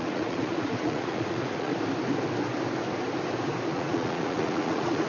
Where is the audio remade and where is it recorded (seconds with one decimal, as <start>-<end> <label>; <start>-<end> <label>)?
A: 0.0-1.7 remade; 1.7-3.7 recorded; 3.7-5.1 remade